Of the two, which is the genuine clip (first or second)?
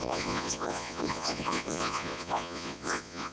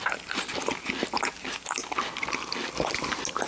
second